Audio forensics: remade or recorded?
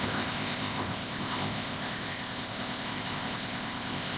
remade